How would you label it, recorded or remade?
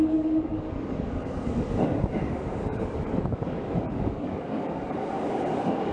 remade